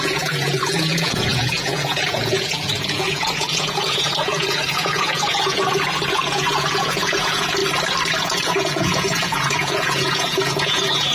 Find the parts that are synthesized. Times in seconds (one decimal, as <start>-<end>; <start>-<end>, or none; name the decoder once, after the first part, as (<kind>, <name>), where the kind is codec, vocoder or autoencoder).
0.0-7.6 (vocoder, Vocos); 8.2-11.1